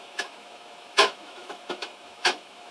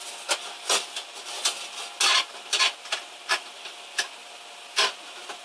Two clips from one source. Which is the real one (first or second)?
second